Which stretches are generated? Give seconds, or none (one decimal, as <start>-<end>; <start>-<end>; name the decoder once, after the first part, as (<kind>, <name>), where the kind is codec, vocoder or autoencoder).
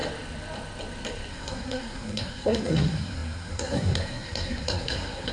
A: 1.3-5.3 (codec, SNAC)